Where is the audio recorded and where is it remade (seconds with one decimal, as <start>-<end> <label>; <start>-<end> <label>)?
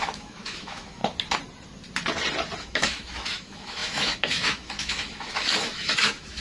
0.0-1.0 remade; 1.0-2.6 recorded; 2.6-6.4 remade